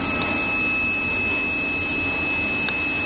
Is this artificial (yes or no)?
no